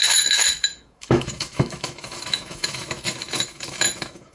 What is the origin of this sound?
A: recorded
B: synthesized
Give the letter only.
B